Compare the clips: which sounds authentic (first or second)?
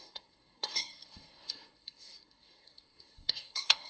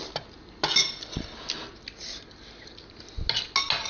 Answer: second